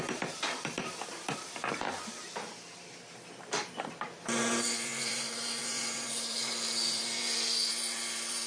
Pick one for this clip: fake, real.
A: fake